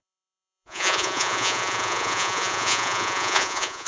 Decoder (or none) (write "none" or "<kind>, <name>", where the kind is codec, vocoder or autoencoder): vocoder, Vocos